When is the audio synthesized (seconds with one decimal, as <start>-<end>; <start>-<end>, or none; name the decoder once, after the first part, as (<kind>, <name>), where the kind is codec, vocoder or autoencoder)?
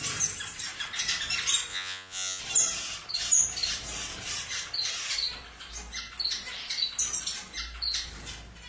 1.7-2.4 (vocoder, Vocos)